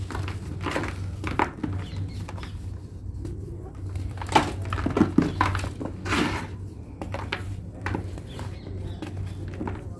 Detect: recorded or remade recorded